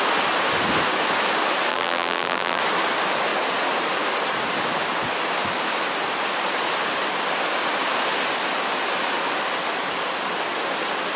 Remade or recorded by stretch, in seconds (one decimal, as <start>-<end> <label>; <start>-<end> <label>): 0.0-1.7 recorded; 1.7-2.6 remade; 2.6-11.2 recorded